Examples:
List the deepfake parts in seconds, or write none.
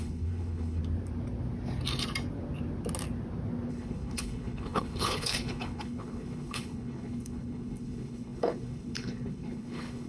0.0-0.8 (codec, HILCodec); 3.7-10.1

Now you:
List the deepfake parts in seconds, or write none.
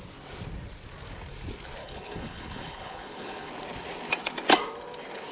1.8-3.5 (codec, HILCodec)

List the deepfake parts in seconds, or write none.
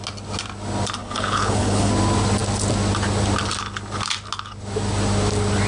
1.0-1.9 (codec, HILCodec)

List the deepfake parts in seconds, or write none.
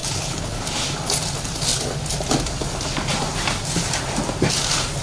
0.0-0.6 (codec, HILCodec)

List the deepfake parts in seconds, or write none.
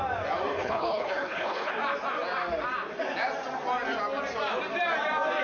0.5-1.7 (codec, HILCodec)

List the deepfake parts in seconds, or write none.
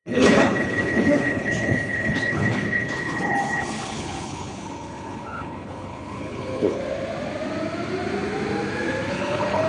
0.0-6.8 (codec, HILCodec); 9.1-9.7